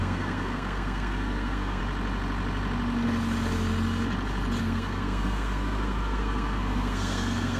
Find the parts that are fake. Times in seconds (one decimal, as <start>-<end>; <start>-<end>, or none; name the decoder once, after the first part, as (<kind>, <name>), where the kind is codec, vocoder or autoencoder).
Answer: 0.0-1.8 (codec, SNAC); 4.6-7.6